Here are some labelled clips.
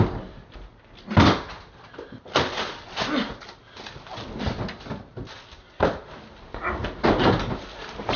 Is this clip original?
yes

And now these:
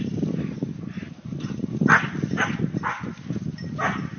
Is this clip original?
yes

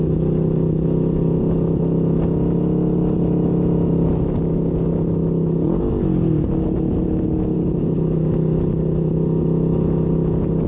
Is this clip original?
yes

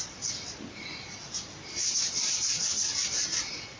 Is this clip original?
yes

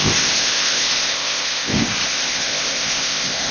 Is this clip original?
no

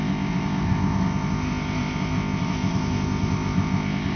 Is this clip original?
no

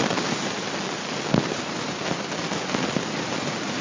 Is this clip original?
yes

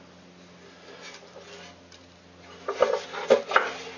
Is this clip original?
yes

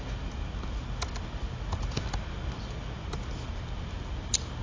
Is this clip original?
yes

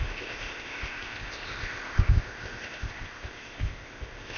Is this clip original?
no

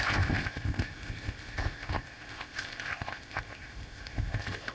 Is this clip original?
no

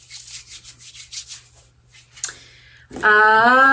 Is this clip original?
yes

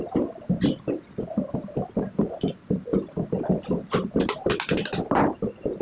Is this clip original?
yes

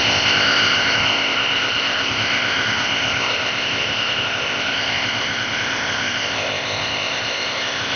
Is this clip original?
no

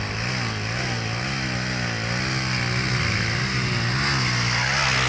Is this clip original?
yes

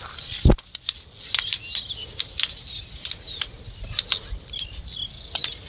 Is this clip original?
yes